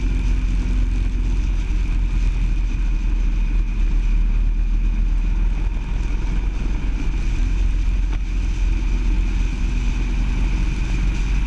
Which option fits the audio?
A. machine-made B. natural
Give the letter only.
B